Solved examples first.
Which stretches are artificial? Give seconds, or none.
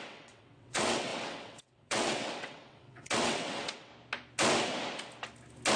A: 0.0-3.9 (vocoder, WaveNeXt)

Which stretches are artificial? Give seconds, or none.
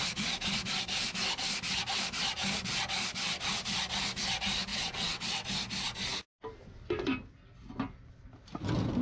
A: 4.7-5.5 (vocoder, WaveNeXt)